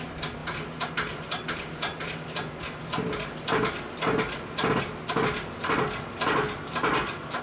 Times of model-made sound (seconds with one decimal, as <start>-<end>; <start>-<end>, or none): none